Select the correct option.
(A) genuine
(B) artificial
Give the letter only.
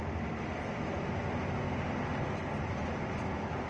A